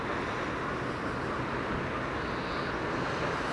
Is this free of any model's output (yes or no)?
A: yes